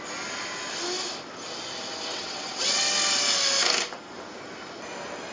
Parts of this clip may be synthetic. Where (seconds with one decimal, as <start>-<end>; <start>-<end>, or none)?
2.1-2.8